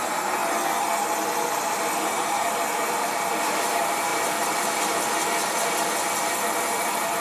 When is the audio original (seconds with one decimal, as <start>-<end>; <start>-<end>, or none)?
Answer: 0.4-1.8; 4.1-6.8